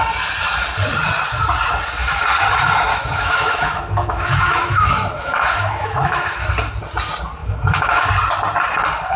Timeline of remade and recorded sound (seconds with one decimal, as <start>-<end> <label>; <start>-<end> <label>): 0.0-2.9 recorded; 2.9-6.5 remade; 6.5-7.4 recorded; 7.4-8.1 remade; 8.1-9.2 recorded